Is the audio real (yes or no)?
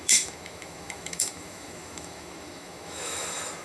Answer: no